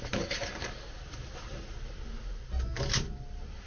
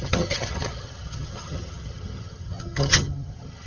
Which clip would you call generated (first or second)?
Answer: second